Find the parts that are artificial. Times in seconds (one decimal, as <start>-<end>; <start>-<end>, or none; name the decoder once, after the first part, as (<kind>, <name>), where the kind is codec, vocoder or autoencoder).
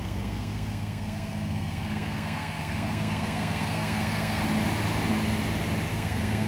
0.0-4.4 (codec, SNAC); 5.9-6.5